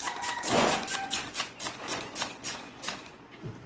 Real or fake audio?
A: fake